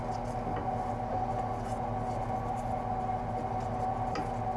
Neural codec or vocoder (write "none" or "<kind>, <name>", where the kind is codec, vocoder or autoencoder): none